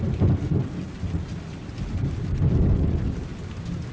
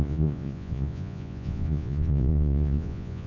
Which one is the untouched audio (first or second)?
first